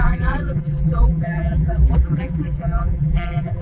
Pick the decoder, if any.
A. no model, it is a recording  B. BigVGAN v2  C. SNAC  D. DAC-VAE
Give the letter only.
B